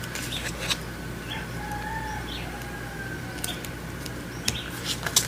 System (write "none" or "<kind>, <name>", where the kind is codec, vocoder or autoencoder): none